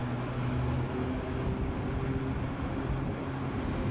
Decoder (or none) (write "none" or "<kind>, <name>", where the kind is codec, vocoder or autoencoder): none